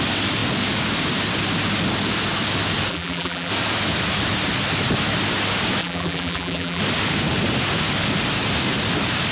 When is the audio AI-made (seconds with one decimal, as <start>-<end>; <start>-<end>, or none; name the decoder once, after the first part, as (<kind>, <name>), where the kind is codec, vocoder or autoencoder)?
2.9-3.5 (vocoder, BigVGAN v2); 5.8-6.8